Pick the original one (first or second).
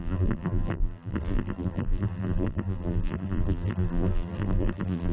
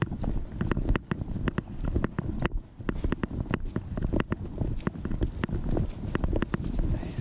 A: second